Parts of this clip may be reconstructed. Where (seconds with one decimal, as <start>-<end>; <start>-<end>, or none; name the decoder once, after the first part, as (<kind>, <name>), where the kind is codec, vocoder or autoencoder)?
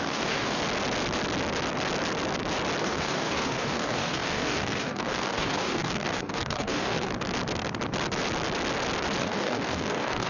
0.0-0.6 (codec, DAC); 2.8-7.1; 9.2-10.3